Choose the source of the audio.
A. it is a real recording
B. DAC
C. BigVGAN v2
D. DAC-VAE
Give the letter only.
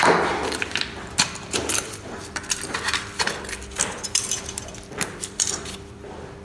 C